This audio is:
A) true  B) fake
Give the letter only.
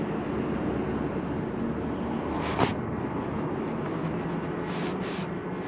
A